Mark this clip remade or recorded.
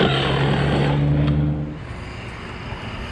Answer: recorded